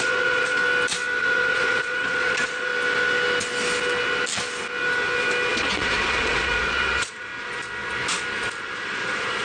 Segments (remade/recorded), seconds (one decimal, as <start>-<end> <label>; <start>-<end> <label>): 0.0-0.6 remade; 0.6-1.2 recorded; 1.2-2.7 remade; 2.7-5.5 recorded; 5.5-7.3 remade; 7.3-8.6 recorded; 8.6-9.4 remade

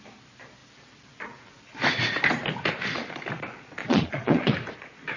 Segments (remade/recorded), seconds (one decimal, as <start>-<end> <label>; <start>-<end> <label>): 0.0-3.8 recorded; 3.8-4.5 remade; 4.5-5.2 recorded

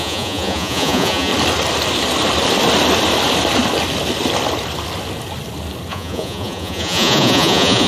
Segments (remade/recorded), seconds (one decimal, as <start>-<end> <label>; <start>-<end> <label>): 0.0-1.3 remade; 1.3-5.9 recorded; 5.9-7.9 remade

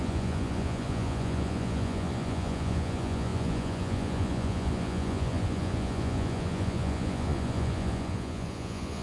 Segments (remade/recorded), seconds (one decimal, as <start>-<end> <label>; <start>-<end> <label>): 0.0-9.0 remade

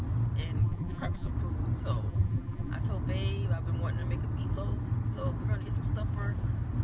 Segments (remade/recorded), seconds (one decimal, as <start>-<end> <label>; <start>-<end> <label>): 0.0-0.6 recorded; 0.6-1.3 remade; 1.3-2.1 recorded; 2.1-2.7 remade; 2.7-6.8 recorded